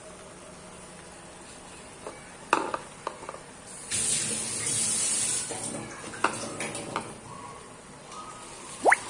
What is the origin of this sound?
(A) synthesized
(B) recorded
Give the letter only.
B